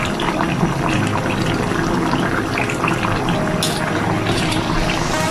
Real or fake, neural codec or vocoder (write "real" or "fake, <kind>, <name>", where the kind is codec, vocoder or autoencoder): real